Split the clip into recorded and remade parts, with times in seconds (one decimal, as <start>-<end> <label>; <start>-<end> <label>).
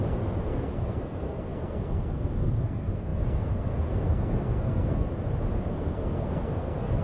0.0-5.1 remade; 5.1-5.7 recorded; 5.7-7.0 remade